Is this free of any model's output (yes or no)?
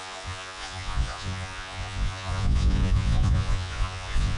no